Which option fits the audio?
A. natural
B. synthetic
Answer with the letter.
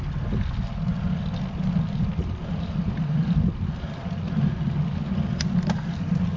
A